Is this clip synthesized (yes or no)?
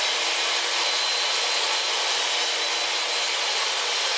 no